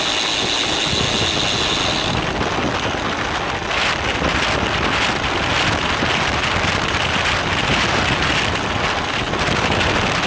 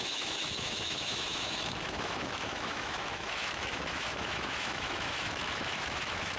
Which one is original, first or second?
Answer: first